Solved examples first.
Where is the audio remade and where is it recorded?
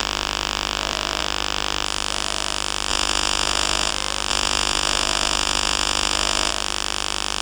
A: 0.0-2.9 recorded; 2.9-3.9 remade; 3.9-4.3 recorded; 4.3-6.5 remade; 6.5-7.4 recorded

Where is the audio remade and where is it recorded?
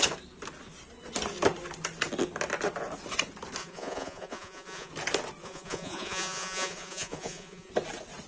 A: 0.0-3.6 recorded; 3.6-4.9 remade; 4.9-5.4 recorded; 5.4-7.7 remade; 7.7-8.3 recorded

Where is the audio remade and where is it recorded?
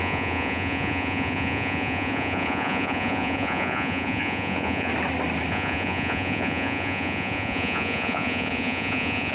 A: 0.0-4.9 remade; 4.9-5.5 recorded; 5.5-9.3 remade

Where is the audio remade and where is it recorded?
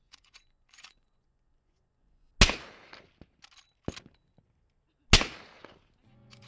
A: 0.0-2.3 remade; 2.3-6.1 recorded; 6.1-6.5 remade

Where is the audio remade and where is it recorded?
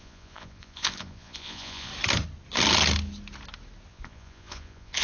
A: 0.0-1.9 remade; 1.9-3.9 recorded; 3.9-5.0 remade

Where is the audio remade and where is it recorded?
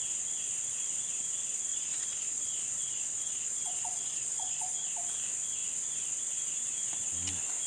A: 0.0-1.7 recorded; 1.7-4.9 remade; 4.9-7.7 recorded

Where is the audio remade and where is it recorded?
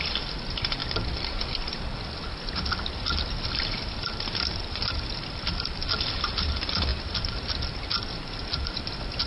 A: 0.0-9.3 recorded